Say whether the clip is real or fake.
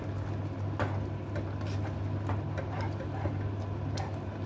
real